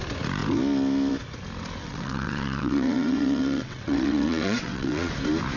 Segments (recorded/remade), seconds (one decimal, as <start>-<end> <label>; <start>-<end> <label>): 0.0-1.8 recorded; 1.8-5.1 remade; 5.1-5.6 recorded